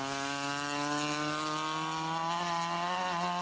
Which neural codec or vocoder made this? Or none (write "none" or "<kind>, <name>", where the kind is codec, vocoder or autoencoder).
none